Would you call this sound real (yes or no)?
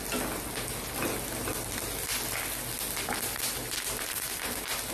yes